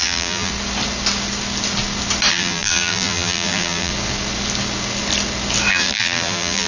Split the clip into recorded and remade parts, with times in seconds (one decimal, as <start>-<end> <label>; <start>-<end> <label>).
0.0-0.5 remade; 0.5-2.3 recorded; 2.3-3.9 remade; 3.9-5.7 recorded; 5.7-6.7 remade